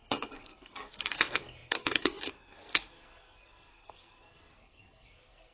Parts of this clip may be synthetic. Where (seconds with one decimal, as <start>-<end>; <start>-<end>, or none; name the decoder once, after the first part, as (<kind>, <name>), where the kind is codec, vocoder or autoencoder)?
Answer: 0.0-5.5 (codec, SNAC)